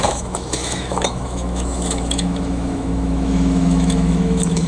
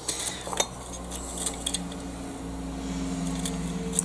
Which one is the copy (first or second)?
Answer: first